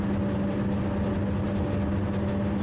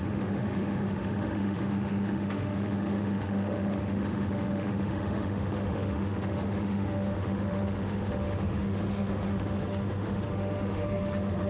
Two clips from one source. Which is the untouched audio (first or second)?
first